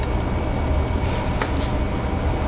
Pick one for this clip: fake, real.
real